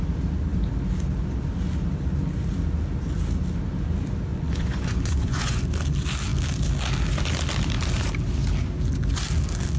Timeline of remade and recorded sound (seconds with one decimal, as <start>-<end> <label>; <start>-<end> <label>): 0.0-4.3 recorded; 4.3-5.6 remade; 5.6-9.8 recorded